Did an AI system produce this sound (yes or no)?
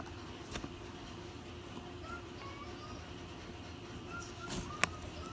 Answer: no